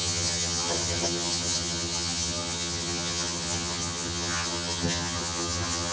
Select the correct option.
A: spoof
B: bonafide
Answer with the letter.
A